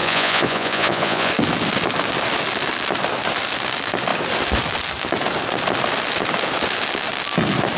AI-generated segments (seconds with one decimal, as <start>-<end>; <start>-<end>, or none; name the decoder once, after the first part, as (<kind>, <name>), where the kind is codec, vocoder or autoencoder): 0.0-1.3 (vocoder, Vocos)